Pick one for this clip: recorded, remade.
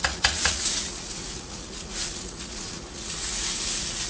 remade